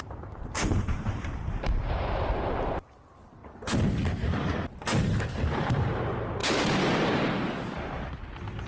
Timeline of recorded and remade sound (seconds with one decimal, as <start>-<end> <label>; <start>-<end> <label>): 0.0-3.4 remade; 3.4-5.0 recorded; 5.0-8.7 remade